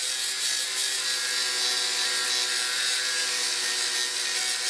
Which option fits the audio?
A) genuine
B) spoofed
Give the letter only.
A